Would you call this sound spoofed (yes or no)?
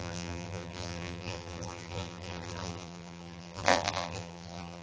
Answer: yes